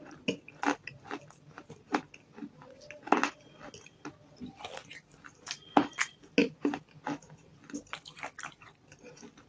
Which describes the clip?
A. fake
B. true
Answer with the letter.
B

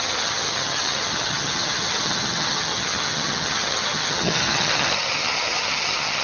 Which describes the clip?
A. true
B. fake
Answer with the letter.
B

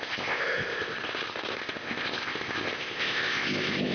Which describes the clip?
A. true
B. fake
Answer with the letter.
B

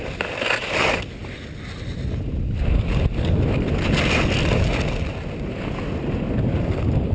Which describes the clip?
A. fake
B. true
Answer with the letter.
B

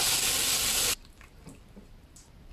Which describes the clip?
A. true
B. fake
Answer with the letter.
A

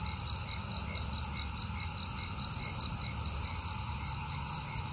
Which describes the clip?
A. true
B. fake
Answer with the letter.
A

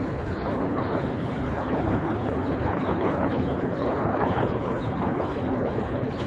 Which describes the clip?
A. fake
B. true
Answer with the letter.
A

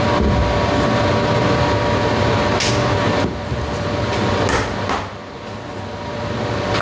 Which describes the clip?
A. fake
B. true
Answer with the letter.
B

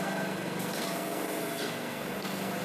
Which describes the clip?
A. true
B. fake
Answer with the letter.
B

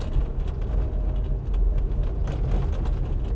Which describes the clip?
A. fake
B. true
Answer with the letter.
B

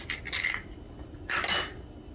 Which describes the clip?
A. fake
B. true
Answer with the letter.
B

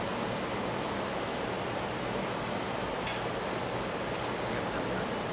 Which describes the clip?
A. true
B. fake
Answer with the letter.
A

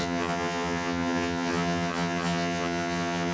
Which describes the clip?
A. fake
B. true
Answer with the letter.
A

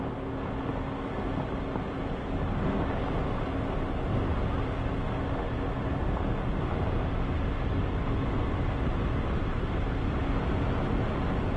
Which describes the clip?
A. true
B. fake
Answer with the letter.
A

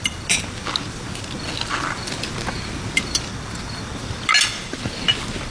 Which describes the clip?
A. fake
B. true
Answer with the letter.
B